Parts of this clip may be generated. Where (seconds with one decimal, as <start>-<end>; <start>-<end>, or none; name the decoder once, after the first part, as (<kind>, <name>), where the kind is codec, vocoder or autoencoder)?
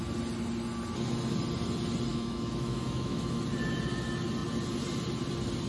2.1-3.4 (autoencoder, DAC-VAE)